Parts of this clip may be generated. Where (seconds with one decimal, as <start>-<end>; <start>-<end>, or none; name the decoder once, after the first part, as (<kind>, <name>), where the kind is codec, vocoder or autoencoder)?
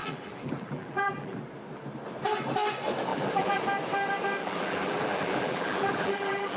0.0-1.4 (vocoder, BigVGAN v2); 3.1-3.6; 4.4-6.6